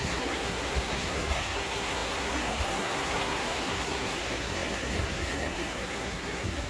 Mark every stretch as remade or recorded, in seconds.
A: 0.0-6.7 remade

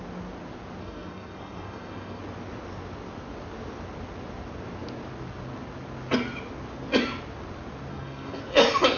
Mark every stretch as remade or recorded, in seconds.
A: 0.0-0.8 recorded; 0.8-2.2 remade; 2.2-7.9 recorded; 7.9-8.4 remade; 8.4-9.0 recorded

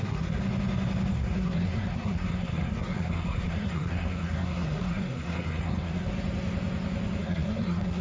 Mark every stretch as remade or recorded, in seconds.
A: 0.0-0.4 remade; 0.4-1.1 recorded; 1.1-6.1 remade; 6.1-7.2 recorded; 7.2-8.0 remade

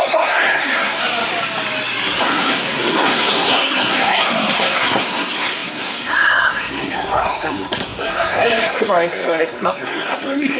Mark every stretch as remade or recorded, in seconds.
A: 0.0-1.0 remade; 1.0-2.2 recorded; 2.2-10.6 remade

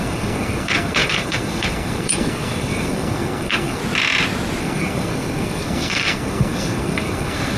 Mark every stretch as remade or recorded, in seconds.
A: 0.0-3.8 remade; 3.8-4.6 recorded; 4.6-7.6 remade